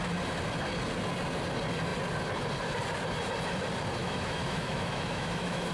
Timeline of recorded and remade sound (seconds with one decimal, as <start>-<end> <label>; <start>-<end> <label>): 0.0-4.0 recorded; 4.0-5.7 remade